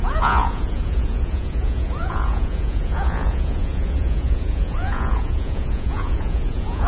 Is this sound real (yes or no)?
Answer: no